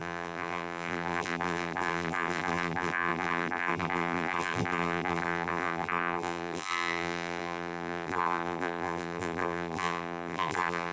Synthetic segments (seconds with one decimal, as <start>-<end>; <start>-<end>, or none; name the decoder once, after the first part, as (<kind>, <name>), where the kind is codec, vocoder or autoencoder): 0.0-10.9 (vocoder, BigVGAN v2)